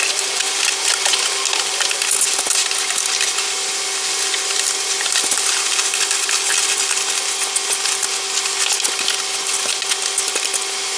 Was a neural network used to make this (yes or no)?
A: no